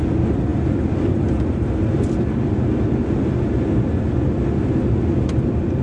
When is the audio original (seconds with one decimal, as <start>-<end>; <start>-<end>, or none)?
0.0-5.8

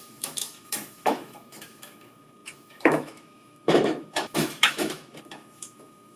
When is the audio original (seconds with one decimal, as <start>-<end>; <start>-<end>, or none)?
none

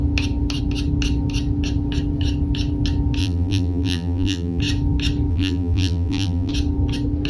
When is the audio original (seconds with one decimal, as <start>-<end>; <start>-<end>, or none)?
0.0-3.2; 4.6-5.3; 6.5-7.3

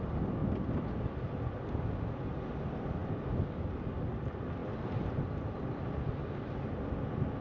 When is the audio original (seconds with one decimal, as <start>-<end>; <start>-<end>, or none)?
0.0-7.4